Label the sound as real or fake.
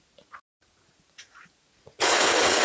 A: fake